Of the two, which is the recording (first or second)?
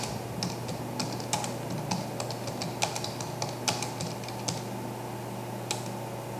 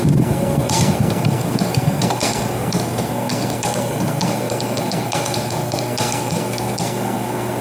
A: first